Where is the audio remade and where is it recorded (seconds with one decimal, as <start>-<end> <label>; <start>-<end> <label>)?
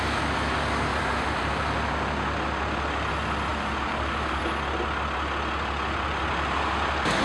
0.0-0.9 recorded; 0.9-1.6 remade; 1.6-3.5 recorded; 3.5-4.4 remade; 4.4-7.2 recorded